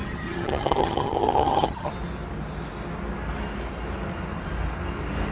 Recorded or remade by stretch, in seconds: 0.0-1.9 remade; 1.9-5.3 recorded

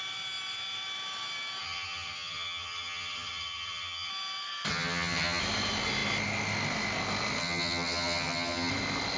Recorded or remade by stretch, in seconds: 0.0-1.6 recorded; 1.6-4.1 remade; 4.1-4.7 recorded; 4.7-5.4 remade; 5.4-7.4 recorded; 7.4-8.7 remade; 8.7-9.2 recorded

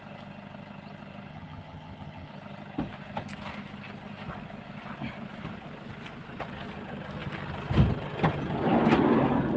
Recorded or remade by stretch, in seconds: 0.0-1.3 recorded; 1.3-2.3 remade; 2.3-9.6 recorded